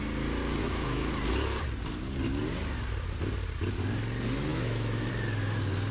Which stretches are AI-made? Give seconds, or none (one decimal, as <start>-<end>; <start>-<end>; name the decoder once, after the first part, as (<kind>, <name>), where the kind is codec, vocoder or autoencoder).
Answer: 0.6-1.1 (autoencoder, DAC-VAE); 4.5-5.1